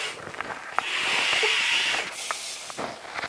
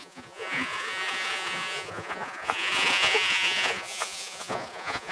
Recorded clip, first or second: first